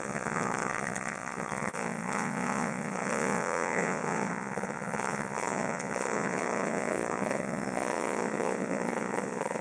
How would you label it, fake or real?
fake